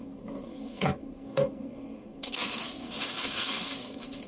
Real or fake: fake